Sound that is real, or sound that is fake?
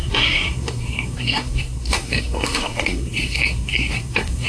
fake